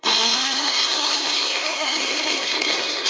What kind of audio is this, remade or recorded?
remade